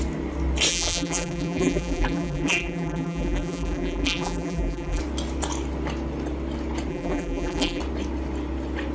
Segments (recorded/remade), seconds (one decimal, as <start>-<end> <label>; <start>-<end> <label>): 0.0-0.7 recorded; 0.7-5.0 remade; 5.0-6.9 recorded; 6.9-7.8 remade; 7.8-8.9 recorded